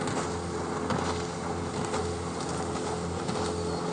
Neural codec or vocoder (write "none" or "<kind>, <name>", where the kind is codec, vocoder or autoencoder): none